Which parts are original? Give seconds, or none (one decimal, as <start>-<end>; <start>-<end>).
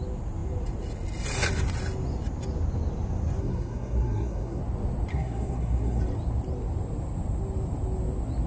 0.0-3.4; 4.6-5.1; 6.0-8.5